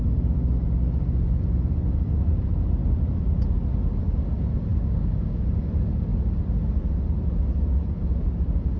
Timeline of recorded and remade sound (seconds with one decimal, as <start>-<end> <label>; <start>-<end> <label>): 0.0-4.7 recorded; 4.7-5.4 remade; 5.4-8.8 recorded